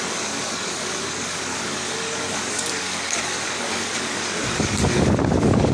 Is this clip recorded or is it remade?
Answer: remade